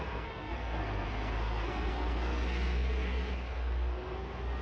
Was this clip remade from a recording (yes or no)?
yes